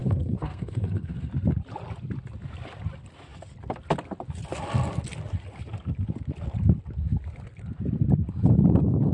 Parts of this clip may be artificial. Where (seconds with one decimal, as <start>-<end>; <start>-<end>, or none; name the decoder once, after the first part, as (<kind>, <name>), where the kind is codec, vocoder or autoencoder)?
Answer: 0.0-1.3 (codec, SNAC)